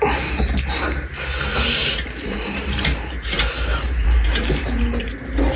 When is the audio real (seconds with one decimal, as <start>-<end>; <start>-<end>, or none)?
0.0-1.8